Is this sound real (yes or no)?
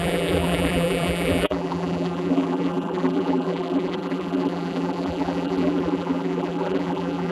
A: no